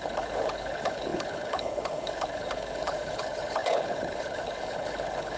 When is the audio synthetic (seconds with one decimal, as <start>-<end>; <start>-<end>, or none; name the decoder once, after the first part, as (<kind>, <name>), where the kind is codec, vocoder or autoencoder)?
0.0-5.4 (codec, HILCodec)